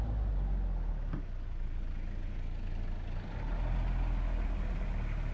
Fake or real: real